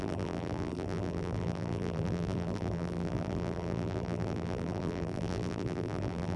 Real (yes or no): no